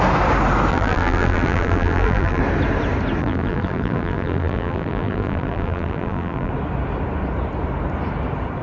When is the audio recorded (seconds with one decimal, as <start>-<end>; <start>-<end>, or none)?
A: 0.0-0.7; 2.4-3.2; 6.5-8.6

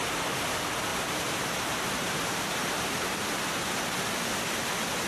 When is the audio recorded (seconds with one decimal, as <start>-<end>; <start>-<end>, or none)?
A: 0.0-0.9; 4.0-5.1

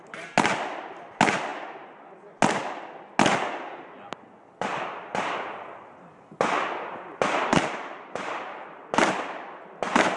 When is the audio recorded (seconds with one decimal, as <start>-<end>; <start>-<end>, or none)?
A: 0.0-7.5; 8.9-10.2

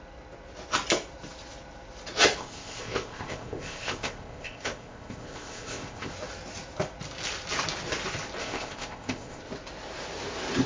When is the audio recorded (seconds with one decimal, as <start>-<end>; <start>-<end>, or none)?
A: 0.0-2.4; 6.1-8.4; 9.4-10.7

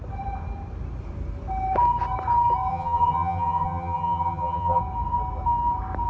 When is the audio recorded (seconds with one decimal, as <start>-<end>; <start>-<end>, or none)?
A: 0.0-2.7; 4.8-6.1

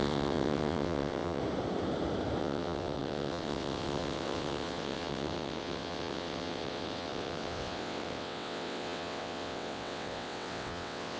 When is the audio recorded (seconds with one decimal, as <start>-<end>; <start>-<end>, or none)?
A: 1.4-2.4

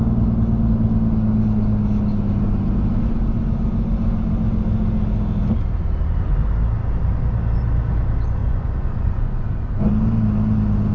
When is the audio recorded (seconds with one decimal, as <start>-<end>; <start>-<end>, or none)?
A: 0.0-8.4; 9.7-10.9

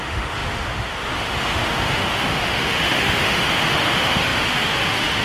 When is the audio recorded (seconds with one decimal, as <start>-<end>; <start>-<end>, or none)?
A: none